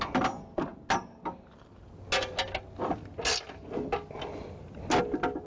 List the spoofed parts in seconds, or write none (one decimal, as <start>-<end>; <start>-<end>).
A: none